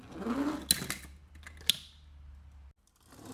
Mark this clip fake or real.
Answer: real